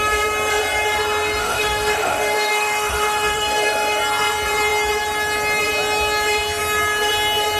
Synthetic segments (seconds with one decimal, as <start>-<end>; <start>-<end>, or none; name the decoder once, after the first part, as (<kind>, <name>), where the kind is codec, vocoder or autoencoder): 1.4-4.0 (autoencoder, DAC-VAE)